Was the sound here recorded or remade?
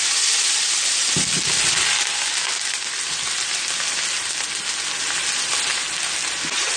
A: recorded